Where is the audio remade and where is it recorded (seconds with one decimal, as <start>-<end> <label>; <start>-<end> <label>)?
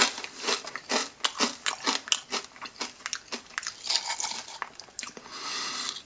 0.0-6.1 recorded